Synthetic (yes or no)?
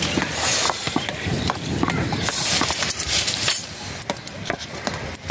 yes